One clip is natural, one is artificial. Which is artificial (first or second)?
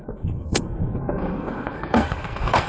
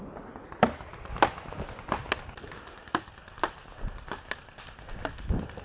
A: first